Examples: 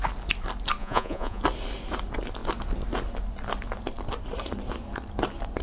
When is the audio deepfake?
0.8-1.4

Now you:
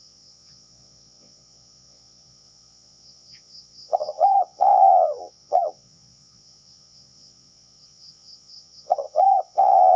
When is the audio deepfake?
0.0-10.0